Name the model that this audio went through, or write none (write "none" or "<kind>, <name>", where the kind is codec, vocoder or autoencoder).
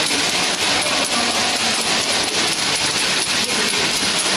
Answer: none